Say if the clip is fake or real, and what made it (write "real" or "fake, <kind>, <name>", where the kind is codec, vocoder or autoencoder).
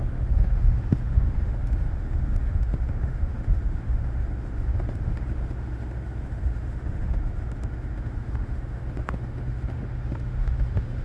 fake, autoencoder, DAC-VAE